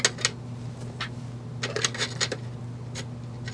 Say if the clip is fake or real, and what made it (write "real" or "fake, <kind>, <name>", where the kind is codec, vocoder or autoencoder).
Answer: real